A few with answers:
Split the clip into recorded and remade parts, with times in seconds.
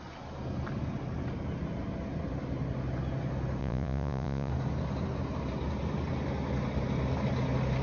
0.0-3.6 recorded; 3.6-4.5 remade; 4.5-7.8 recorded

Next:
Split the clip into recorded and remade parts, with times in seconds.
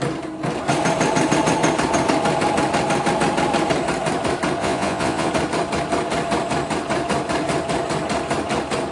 0.0-4.6 recorded; 4.6-5.3 remade; 5.3-8.9 recorded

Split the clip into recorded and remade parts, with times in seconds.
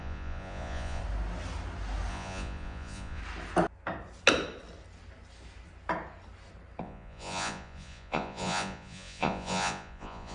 0.0-1.0 remade; 1.0-2.1 recorded; 2.1-3.2 remade; 3.2-6.8 recorded; 6.8-10.3 remade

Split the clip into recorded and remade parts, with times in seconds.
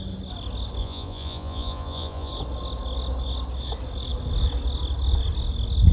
0.0-0.8 recorded; 0.8-2.3 remade; 2.3-5.9 recorded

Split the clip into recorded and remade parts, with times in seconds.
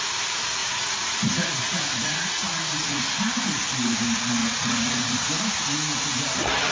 0.0-0.6 recorded; 0.6-3.1 remade; 3.1-4.4 recorded; 4.4-5.3 remade; 5.3-6.7 recorded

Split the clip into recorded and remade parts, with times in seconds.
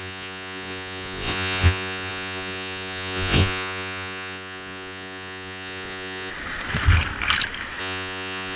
0.0-6.3 remade; 6.3-7.8 recorded; 7.8-8.6 remade